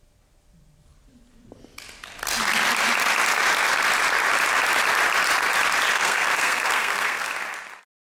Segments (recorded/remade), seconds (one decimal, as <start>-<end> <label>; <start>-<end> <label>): 0.0-5.9 recorded; 5.9-7.3 remade; 7.3-8.1 recorded